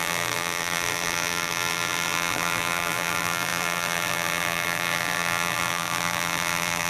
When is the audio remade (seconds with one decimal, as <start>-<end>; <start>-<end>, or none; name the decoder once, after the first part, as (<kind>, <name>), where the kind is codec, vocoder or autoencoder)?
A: 0.0-6.9 (vocoder, BigVGAN v2)